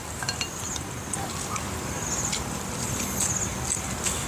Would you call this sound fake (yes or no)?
no